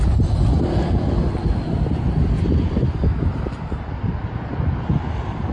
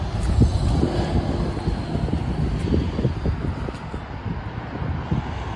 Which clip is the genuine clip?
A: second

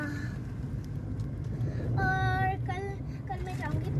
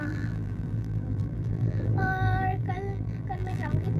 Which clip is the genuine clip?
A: first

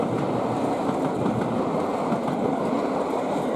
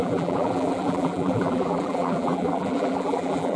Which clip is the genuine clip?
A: first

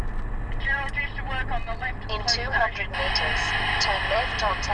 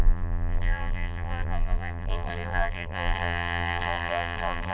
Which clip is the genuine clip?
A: first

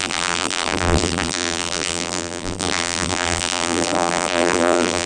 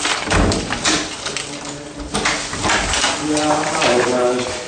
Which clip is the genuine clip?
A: second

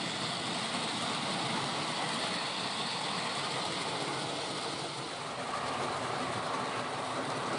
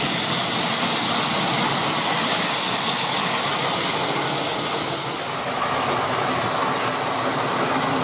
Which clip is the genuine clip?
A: second